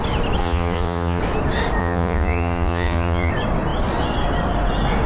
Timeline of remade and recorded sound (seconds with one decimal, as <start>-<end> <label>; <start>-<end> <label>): 0.0-0.4 recorded; 0.4-1.2 remade; 1.2-1.8 recorded; 1.8-3.3 remade; 3.3-5.1 recorded